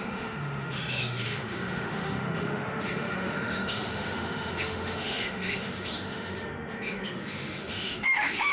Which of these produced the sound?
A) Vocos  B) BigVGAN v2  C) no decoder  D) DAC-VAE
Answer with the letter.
D